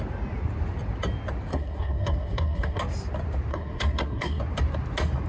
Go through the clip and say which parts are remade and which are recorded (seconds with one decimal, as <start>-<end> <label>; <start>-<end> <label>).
0.0-1.5 recorded; 1.5-2.8 remade; 2.8-3.5 recorded; 3.5-4.4 remade; 4.4-5.3 recorded

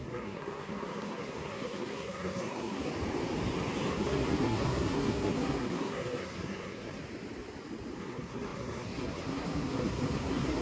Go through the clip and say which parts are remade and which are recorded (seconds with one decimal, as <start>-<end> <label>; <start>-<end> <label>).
0.0-2.9 remade; 2.9-3.9 recorded; 3.9-7.0 remade; 7.0-8.0 recorded; 8.0-10.6 remade

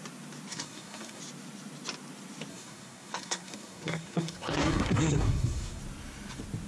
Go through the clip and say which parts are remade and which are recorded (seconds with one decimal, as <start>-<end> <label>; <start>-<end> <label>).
0.0-0.5 recorded; 0.5-1.2 remade; 1.2-2.5 recorded; 2.5-5.8 remade; 5.8-6.7 recorded

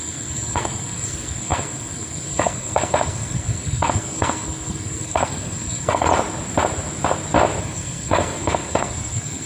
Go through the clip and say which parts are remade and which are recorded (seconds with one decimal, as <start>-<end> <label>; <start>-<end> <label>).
0.0-6.1 remade; 6.1-7.6 recorded; 7.6-9.4 remade

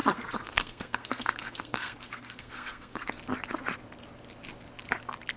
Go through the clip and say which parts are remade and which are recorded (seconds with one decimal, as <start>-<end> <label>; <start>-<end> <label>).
0.0-3.1 remade; 3.1-5.4 recorded

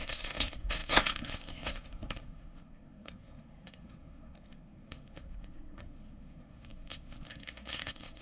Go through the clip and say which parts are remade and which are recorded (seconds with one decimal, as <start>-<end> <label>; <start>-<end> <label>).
0.0-8.2 remade

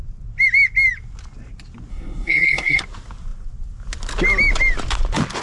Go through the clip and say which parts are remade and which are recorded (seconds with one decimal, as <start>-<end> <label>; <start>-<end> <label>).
0.0-1.9 recorded; 1.9-2.8 remade; 2.8-5.4 recorded